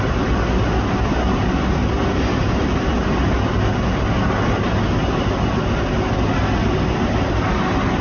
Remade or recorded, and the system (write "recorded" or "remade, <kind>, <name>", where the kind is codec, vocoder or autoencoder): recorded